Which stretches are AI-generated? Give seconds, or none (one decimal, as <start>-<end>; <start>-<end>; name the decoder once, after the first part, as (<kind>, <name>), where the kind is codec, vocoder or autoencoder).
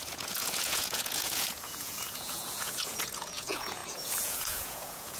0.0-5.2 (vocoder, Vocos)